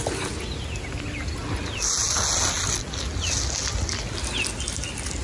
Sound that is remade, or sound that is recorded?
recorded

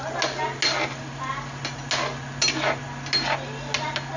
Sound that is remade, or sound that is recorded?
recorded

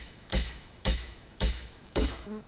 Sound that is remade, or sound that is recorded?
remade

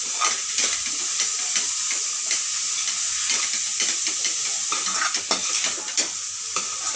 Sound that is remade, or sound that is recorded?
recorded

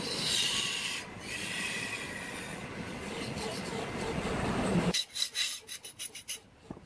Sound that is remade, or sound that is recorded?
recorded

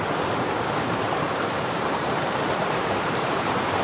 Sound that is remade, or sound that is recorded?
remade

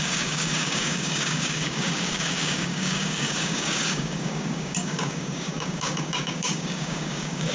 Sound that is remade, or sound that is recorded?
remade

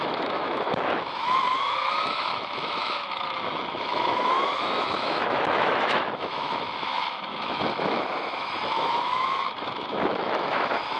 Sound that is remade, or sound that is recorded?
remade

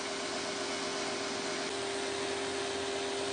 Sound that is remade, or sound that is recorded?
recorded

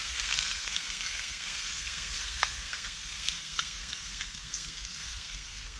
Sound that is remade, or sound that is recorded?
remade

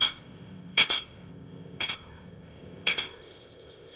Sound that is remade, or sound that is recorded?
remade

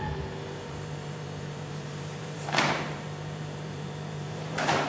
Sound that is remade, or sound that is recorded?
remade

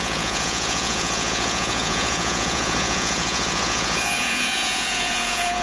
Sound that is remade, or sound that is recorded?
remade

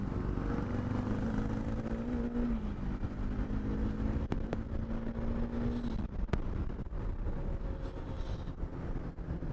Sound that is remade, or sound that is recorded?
recorded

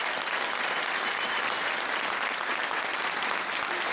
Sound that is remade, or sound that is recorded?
recorded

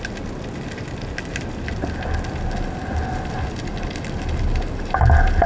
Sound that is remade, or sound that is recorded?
recorded